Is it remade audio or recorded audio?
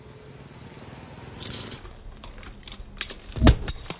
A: recorded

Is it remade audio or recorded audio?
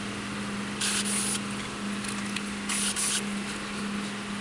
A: recorded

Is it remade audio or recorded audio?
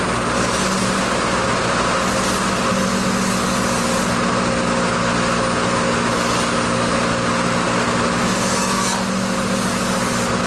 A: recorded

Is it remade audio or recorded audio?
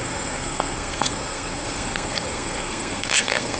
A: remade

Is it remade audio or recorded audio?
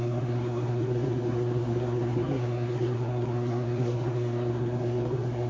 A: remade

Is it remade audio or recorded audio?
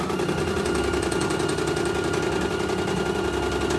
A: recorded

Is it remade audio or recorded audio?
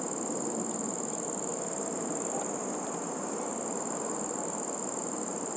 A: recorded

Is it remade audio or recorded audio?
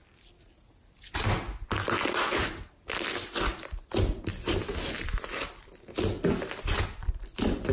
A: recorded